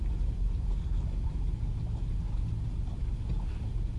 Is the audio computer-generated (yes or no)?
no